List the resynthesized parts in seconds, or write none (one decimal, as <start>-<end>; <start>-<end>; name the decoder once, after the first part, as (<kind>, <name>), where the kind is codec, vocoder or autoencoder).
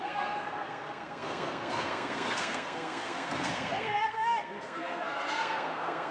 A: 0.0-6.1 (codec, SNAC)